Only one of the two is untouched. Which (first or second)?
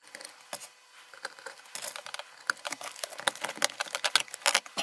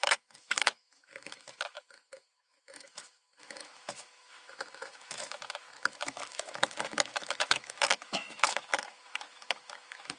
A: first